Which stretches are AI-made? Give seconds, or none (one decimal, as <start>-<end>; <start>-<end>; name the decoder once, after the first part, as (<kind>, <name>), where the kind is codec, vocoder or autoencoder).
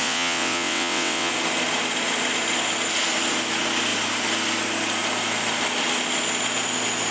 0.0-1.3 (vocoder, WaveNeXt)